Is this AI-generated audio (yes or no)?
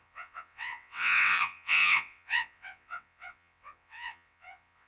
yes